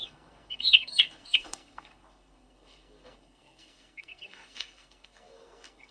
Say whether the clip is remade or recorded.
remade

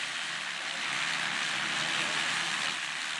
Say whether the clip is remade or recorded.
recorded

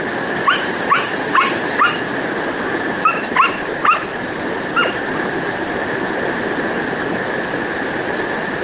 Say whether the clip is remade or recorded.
recorded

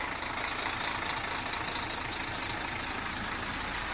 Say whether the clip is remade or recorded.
recorded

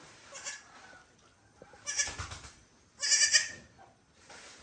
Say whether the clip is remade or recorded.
recorded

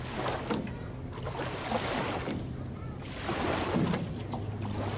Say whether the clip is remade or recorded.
recorded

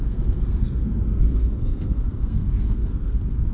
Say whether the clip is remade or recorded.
remade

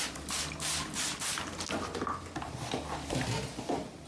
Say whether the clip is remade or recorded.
recorded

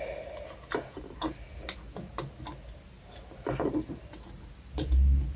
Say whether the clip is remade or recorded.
recorded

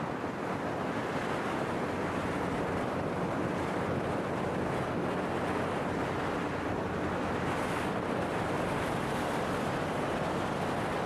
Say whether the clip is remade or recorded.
recorded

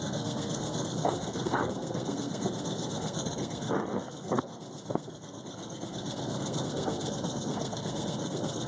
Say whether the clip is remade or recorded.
remade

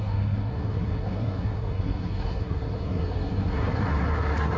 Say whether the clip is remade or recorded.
remade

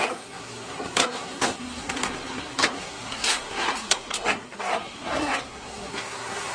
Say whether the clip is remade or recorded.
remade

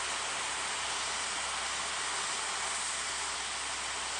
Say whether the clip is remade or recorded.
recorded